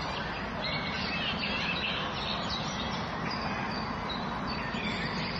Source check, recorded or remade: recorded